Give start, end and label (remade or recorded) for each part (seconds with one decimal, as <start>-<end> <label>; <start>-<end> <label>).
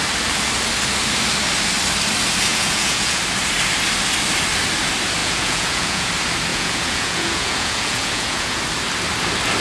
0.0-2.5 recorded; 2.5-3.2 remade; 3.2-5.2 recorded; 5.2-6.1 remade; 6.1-6.5 recorded; 6.5-8.6 remade; 8.6-9.6 recorded